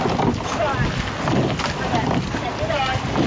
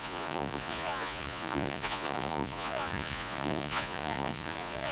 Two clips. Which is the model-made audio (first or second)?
second